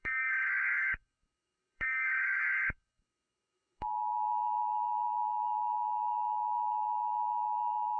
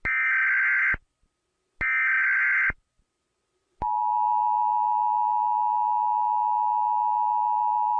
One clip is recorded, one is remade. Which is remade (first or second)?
first